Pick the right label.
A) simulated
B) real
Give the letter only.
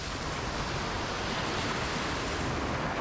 B